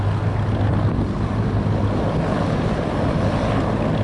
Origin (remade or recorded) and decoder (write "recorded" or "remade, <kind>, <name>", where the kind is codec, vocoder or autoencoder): recorded